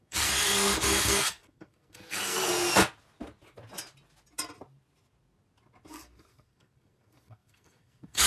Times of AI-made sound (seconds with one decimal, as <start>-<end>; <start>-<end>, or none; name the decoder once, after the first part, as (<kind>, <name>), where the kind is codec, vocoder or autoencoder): 0.0-2.5 (codec, SNAC); 5.9-8.3